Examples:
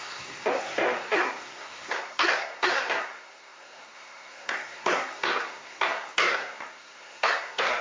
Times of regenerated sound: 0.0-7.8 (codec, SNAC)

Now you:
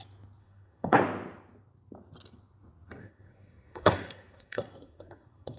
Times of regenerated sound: 0.4-1.0 (codec, SNAC); 3.0-5.6